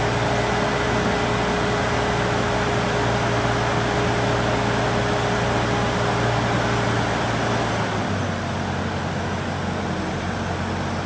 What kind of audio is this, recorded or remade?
recorded